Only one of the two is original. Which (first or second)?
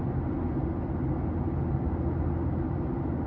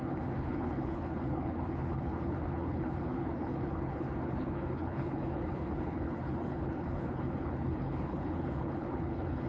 first